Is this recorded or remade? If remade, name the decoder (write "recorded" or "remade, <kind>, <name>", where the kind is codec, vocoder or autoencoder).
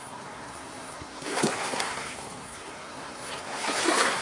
remade, codec, SNAC